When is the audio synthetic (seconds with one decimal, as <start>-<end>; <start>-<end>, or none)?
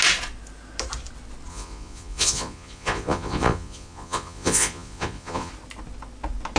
1.5-5.5